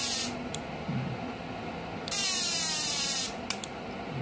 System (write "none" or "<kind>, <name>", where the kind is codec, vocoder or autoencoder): none